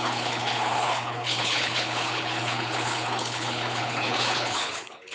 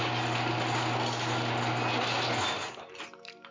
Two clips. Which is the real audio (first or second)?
second